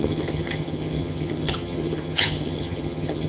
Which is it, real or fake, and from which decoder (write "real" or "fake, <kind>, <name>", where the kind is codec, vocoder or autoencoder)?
fake, vocoder, HiFi-GAN